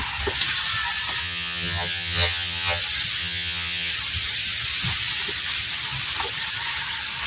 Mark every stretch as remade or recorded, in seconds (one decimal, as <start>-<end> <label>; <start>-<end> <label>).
0.0-1.2 recorded; 1.2-2.8 remade; 2.8-3.2 recorded; 3.2-3.9 remade; 3.9-7.3 recorded